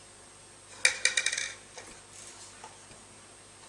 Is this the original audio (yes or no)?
yes